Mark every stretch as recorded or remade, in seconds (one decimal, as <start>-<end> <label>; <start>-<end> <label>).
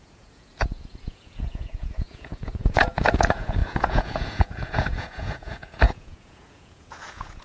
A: 0.0-7.4 remade